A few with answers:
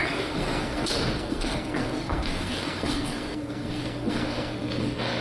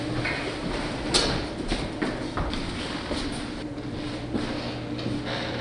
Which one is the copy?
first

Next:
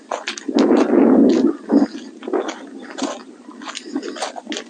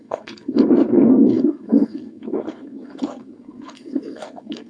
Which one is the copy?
second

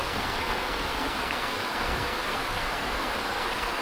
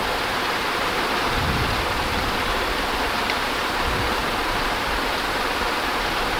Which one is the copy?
first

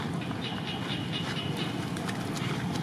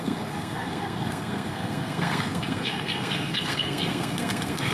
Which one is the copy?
second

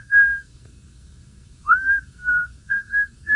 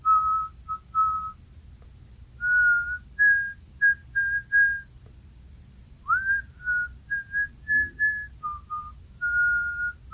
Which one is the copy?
first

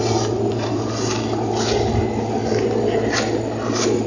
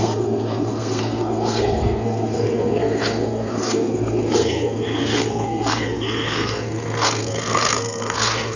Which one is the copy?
second